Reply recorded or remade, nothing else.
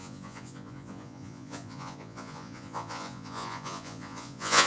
remade